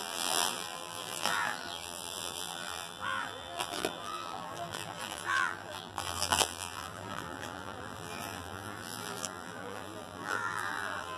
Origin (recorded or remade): remade